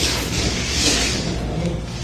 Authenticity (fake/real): fake